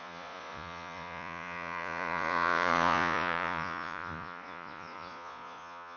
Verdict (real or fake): fake